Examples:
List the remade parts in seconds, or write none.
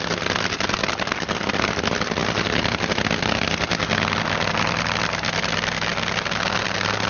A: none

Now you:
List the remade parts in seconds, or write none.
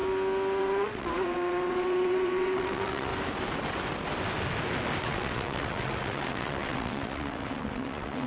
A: 0.6-3.1; 5.0-8.3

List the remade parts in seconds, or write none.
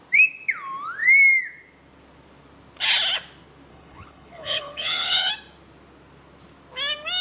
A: 3.7-5.3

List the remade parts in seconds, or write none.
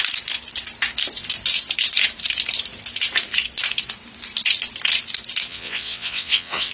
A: 5.5-6.7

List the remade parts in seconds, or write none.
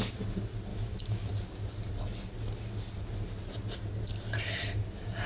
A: 0.7-1.3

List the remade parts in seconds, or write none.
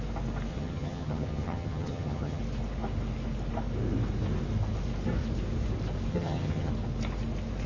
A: 0.5-2.4; 6.1-6.7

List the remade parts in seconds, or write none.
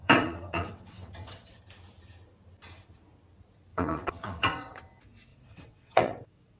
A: 0.0-1.6; 3.7-4.8; 5.3-6.6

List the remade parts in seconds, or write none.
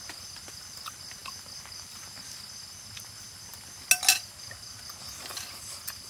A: none